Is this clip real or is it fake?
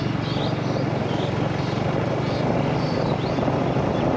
real